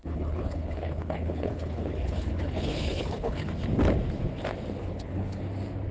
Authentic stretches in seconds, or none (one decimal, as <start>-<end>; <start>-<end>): 3.5-4.8; 5.4-5.9